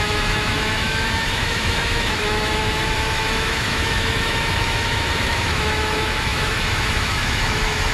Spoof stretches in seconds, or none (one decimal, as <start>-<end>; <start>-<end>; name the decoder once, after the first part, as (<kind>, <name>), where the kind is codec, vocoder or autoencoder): 0.0-7.9 (autoencoder, DAC-VAE)

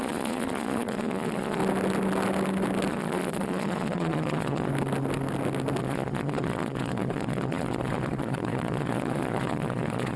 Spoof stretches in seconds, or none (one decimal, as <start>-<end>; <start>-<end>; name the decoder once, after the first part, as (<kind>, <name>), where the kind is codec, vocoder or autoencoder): 0.0-1.6 (vocoder, Vocos); 2.9-4.7; 5.8-10.2